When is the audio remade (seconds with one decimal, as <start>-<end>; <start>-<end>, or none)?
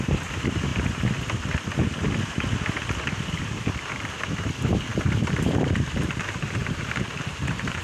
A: 0.0-0.7; 3.4-7.8